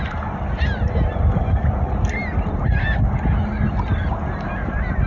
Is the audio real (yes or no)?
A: yes